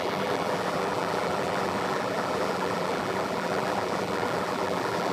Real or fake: fake